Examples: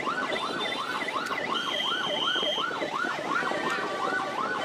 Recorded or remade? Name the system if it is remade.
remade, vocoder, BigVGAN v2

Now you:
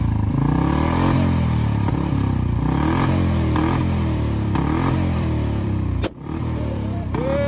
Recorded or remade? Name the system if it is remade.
remade, vocoder, BigVGAN v2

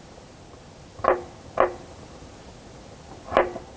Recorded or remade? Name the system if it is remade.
recorded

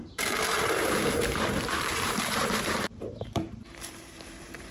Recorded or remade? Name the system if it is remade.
remade, vocoder, BigVGAN v2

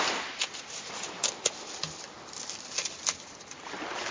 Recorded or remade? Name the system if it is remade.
remade, vocoder, BigVGAN v2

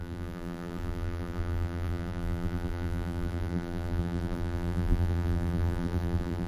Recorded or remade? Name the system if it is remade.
remade, vocoder, BigVGAN v2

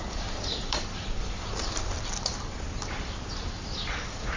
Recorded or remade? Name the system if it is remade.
remade, vocoder, BigVGAN v2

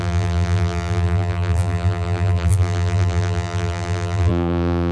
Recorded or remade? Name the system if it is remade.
remade, vocoder, BigVGAN v2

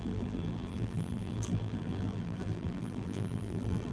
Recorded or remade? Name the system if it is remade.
remade, vocoder, BigVGAN v2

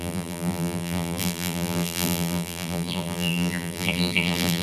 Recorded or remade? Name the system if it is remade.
remade, vocoder, BigVGAN v2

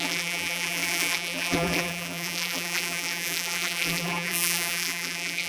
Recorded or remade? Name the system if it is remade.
remade, vocoder, BigVGAN v2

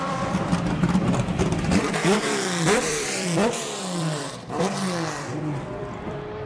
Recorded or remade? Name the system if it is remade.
remade, vocoder, BigVGAN v2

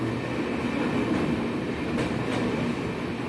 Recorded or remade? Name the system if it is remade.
recorded